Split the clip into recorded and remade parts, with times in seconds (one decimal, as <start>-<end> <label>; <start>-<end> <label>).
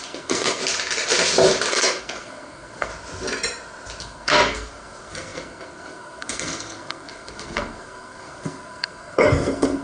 0.0-0.6 remade; 0.6-1.7 recorded; 1.7-2.9 remade; 2.9-4.0 recorded; 4.0-9.8 remade